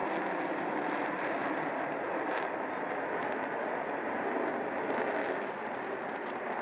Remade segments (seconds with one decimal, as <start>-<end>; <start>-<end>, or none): none